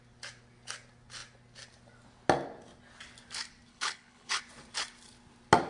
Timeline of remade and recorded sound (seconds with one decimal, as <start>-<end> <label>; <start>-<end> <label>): 0.0-3.7 recorded; 3.7-4.4 remade; 4.4-5.7 recorded